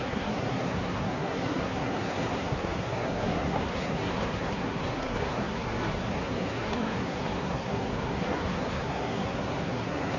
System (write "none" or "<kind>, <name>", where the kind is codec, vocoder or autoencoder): codec, SNAC